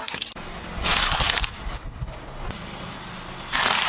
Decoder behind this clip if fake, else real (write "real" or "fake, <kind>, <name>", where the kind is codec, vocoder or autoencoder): real